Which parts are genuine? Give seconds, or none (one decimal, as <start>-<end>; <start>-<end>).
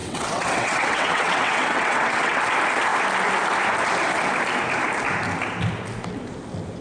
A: 2.4-6.8